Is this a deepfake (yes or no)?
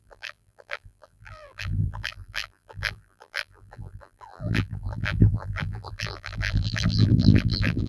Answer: yes